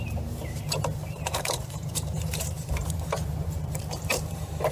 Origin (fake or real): fake